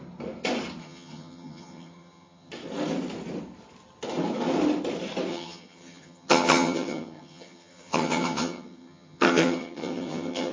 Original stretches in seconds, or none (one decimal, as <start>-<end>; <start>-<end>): 0.0-0.8; 2.5-5.3